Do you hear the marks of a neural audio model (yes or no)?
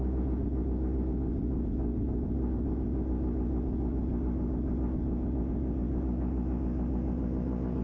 no